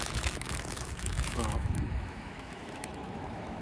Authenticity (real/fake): fake